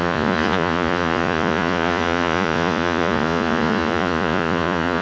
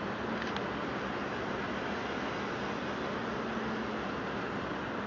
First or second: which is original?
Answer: second